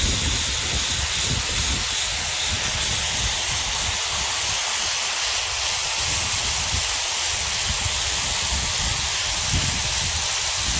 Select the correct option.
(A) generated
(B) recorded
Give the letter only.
B